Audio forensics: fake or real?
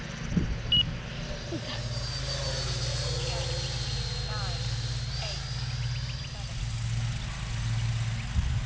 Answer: real